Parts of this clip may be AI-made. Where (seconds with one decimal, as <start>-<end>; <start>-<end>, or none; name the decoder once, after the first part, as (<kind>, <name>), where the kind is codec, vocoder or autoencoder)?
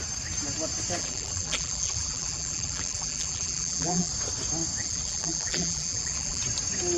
1.0-4.1 (vocoder, BigVGAN v2); 4.8-6.4